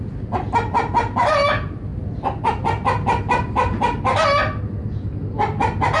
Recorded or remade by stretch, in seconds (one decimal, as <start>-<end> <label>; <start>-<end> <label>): 0.0-6.0 recorded